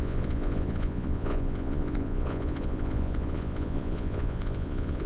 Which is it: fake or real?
fake